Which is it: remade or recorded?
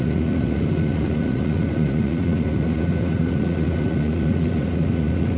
remade